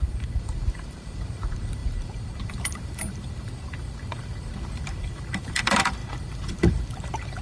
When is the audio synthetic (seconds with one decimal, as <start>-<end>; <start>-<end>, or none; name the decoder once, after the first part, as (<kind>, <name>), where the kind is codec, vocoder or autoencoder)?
0.0-7.4 (vocoder, BigVGAN v2)